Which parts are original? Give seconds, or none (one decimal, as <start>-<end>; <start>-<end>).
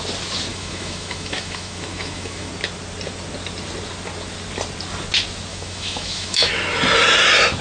0.0-0.5; 2.5-5.5; 6.5-7.6